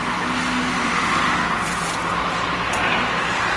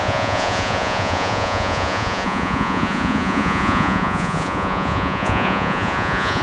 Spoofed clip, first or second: second